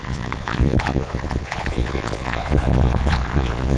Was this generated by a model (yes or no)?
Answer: yes